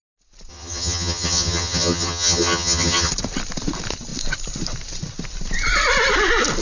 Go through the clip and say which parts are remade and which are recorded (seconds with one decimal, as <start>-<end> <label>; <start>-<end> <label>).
0.0-0.5 recorded; 0.5-3.1 remade; 3.1-6.6 recorded